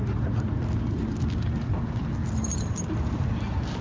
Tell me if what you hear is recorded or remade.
recorded